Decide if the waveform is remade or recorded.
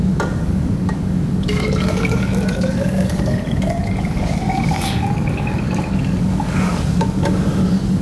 remade